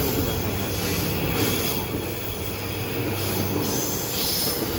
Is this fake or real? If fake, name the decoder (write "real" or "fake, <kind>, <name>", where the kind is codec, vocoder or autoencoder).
real